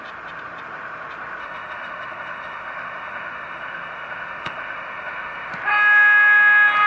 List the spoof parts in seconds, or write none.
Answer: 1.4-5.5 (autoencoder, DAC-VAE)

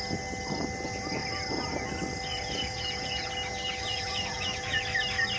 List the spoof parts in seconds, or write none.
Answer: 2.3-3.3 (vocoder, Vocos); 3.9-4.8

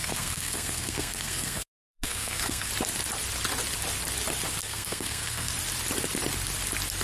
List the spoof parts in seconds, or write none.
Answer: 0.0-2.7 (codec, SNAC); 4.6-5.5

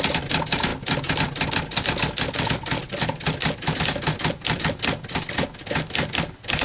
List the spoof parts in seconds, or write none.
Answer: none